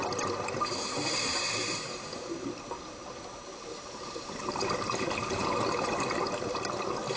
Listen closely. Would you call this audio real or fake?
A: real